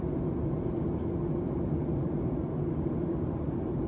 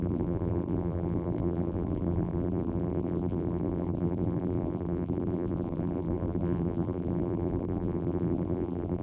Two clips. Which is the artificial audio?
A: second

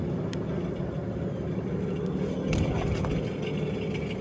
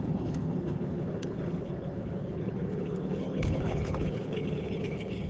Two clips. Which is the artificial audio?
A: second